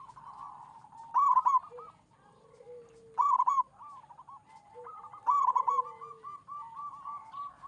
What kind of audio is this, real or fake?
fake